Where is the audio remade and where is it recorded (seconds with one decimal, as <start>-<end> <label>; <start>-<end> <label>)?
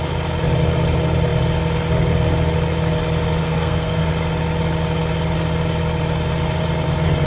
0.0-3.4 recorded; 3.4-4.1 remade; 4.1-7.3 recorded